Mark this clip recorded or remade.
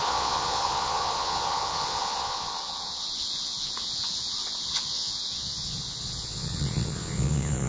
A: remade